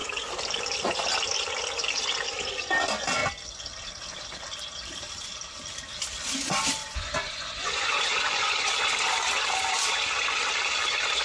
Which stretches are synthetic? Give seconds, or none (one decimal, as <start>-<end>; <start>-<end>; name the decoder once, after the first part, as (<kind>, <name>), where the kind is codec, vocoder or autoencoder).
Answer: 6.8-8.7 (vocoder, Vocos)